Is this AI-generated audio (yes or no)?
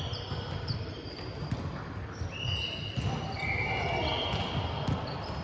no